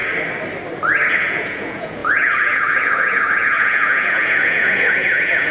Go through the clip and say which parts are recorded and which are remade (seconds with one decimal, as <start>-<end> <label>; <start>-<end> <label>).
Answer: 0.0-1.1 recorded; 1.1-5.5 remade